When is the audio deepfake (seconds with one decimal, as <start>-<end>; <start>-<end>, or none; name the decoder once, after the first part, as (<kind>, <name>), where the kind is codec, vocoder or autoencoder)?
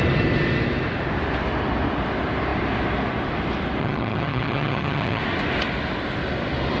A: 3.8-5.2 (vocoder, HiFi-GAN)